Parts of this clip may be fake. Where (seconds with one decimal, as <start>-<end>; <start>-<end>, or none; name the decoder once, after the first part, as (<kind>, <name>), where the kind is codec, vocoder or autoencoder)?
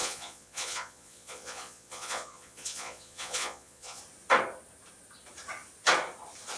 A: 0.0-4.0 (vocoder, Vocos)